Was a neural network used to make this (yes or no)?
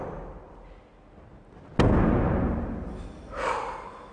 no